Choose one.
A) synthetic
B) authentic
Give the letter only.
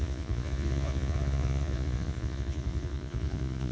A